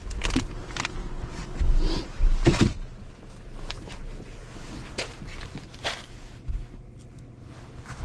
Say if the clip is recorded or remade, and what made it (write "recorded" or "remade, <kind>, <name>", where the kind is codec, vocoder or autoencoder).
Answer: recorded